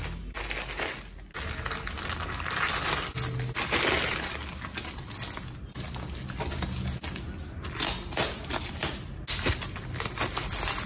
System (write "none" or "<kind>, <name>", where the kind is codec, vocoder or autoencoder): none